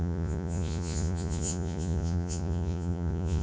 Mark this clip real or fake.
fake